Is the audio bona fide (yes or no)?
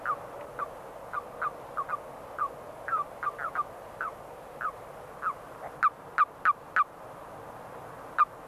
yes